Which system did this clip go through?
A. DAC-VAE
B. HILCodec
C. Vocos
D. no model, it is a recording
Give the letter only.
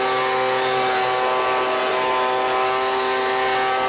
D